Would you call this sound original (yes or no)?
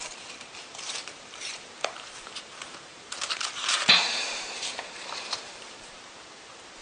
no